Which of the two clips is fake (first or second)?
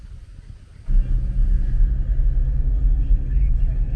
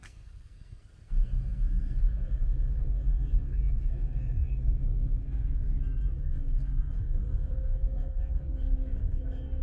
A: second